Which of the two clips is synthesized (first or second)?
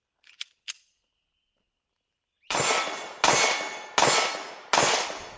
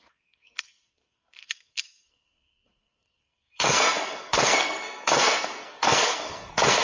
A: second